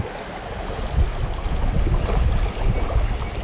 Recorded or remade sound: recorded